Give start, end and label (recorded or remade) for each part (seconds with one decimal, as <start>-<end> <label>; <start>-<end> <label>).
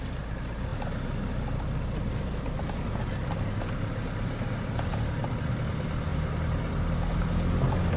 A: 0.0-8.0 recorded